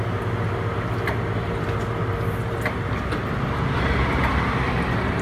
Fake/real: real